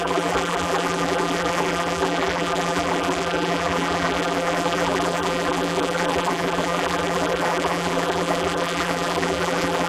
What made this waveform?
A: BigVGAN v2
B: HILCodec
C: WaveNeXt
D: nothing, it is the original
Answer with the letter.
A